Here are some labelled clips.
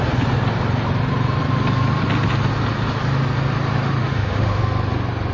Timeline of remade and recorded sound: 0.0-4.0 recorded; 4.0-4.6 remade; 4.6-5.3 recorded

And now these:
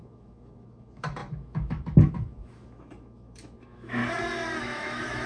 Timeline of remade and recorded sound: 0.0-4.0 remade; 4.0-4.6 recorded; 4.6-5.3 remade

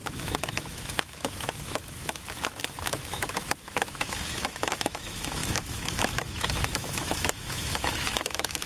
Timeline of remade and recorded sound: 0.0-8.7 remade

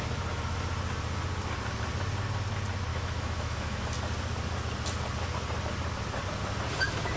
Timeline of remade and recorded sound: 0.0-2.9 recorded; 2.9-3.8 remade; 3.8-7.2 recorded